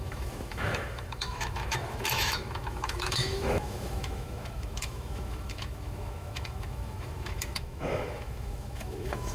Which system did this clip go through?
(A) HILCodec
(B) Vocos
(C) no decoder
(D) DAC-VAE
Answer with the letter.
D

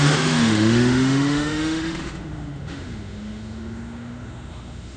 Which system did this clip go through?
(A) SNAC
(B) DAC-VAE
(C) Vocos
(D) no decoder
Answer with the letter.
B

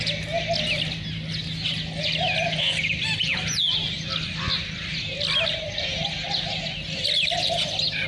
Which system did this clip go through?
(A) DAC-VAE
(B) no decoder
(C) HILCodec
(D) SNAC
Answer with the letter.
B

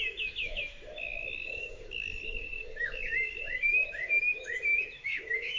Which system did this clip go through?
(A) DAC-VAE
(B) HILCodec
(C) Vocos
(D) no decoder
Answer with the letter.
A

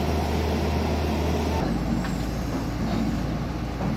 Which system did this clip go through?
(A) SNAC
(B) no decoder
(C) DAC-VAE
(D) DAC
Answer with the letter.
B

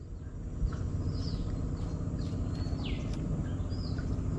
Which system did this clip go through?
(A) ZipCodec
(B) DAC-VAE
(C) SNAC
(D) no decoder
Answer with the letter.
D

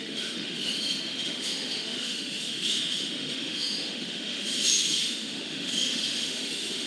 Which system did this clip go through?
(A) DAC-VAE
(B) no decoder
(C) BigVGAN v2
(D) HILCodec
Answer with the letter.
A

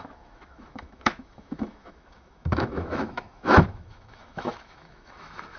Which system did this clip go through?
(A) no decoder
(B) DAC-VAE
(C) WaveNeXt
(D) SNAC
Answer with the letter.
B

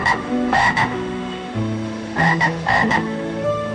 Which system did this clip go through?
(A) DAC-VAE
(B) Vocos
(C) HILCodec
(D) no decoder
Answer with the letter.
A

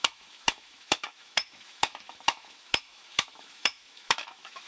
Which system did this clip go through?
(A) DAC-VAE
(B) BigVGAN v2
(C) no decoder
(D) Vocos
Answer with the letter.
A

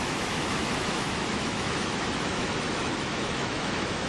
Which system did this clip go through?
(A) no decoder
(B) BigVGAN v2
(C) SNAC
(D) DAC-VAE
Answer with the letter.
D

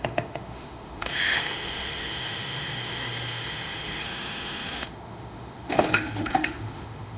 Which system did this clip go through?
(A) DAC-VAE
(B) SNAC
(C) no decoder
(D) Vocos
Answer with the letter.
A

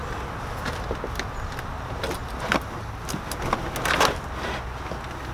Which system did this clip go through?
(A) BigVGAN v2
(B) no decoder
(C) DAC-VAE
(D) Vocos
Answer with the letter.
B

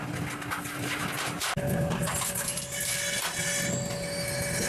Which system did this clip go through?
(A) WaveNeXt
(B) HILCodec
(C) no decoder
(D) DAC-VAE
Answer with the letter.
C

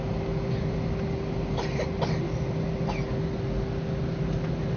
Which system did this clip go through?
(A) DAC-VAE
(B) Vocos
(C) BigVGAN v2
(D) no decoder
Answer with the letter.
D